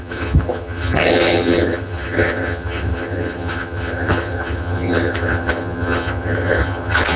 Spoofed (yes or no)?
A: yes